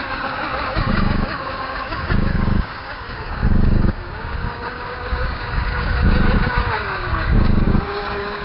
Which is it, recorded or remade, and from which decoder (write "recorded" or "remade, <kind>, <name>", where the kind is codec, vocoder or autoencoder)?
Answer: remade, codec, DAC